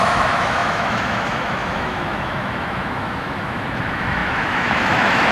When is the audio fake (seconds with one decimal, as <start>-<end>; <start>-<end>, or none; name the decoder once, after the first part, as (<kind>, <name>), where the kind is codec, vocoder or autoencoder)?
0.0-5.3 (autoencoder, DAC-VAE)